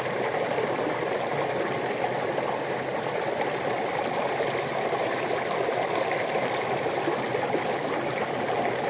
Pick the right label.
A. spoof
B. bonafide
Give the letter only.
B